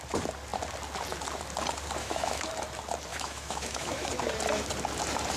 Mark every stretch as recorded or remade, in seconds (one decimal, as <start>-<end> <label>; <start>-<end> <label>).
0.0-2.0 recorded; 2.0-2.5 remade; 2.5-3.1 recorded; 3.1-4.1 remade; 4.1-5.4 recorded